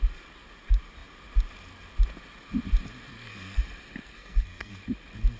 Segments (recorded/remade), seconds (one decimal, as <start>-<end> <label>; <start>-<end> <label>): 0.0-3.1 recorded; 3.1-3.6 remade; 3.6-4.0 recorded; 4.0-4.7 remade; 4.7-5.4 recorded